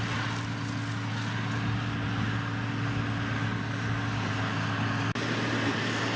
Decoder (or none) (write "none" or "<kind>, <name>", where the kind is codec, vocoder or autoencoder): none